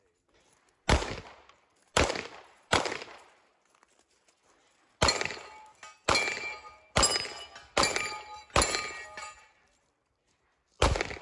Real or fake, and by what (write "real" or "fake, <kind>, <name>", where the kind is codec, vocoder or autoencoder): real